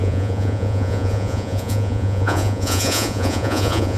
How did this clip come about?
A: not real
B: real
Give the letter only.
A